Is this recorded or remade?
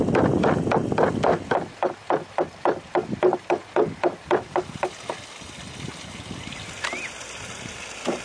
recorded